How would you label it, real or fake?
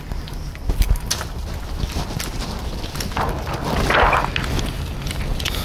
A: real